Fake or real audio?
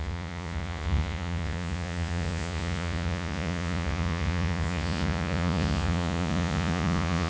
fake